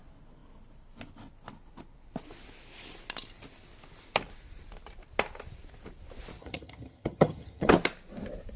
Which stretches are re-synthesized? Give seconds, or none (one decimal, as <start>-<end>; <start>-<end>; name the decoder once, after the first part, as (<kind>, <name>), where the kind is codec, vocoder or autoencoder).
6.4-7.7 (vocoder, HiFi-GAN)